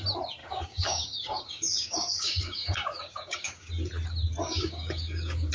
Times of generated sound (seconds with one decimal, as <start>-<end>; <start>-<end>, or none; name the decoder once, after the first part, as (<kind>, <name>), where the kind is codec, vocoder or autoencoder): 0.4-3.7 (codec, DAC); 4.4-5.5